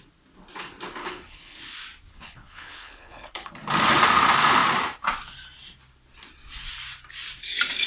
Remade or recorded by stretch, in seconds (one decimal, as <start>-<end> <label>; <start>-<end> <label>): 0.0-1.0 recorded; 1.0-1.6 remade; 1.6-2.1 recorded; 2.1-3.5 remade; 3.5-7.9 recorded